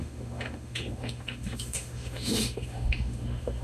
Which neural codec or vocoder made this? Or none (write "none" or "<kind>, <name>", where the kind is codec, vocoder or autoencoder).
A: autoencoder, DAC-VAE